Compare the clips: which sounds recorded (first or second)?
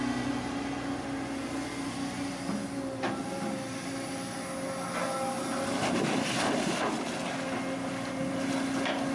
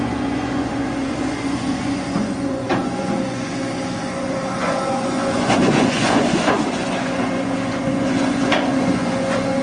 first